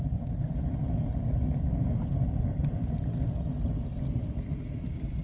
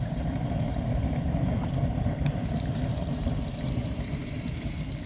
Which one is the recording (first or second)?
first